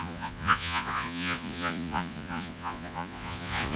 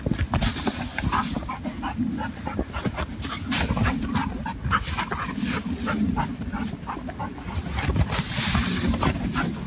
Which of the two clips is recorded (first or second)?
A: second